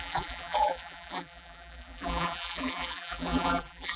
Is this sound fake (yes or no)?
yes